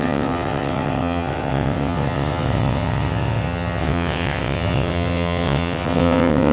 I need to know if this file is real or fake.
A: fake